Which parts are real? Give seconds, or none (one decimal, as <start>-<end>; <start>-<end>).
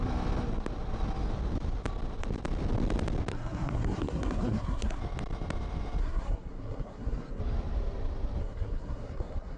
0.0-3.3; 5.0-6.0; 7.4-8.4